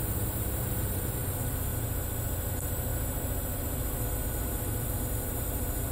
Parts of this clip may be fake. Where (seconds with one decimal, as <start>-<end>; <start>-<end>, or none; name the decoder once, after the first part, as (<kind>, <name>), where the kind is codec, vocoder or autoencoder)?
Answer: 0.0-1.7 (vocoder, BigVGAN v2); 2.5-5.9